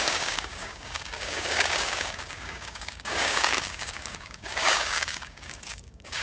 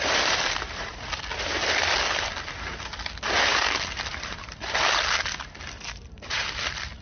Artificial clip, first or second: first